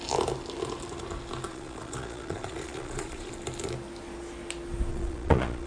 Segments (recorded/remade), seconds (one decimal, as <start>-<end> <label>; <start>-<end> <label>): 0.0-1.5 recorded; 1.5-3.3 remade; 3.3-4.9 recorded; 4.9-5.7 remade